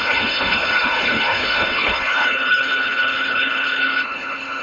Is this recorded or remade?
remade